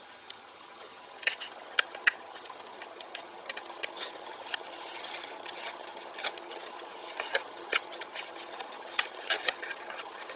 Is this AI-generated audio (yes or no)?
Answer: yes